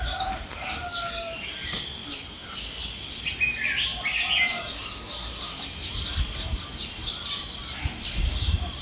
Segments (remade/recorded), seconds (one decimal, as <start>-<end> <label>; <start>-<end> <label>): 0.0-8.8 recorded